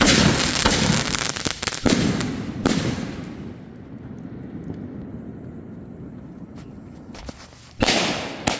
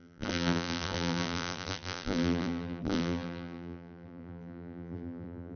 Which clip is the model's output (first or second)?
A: second